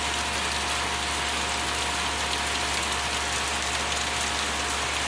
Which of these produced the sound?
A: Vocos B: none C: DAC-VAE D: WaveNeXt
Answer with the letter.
B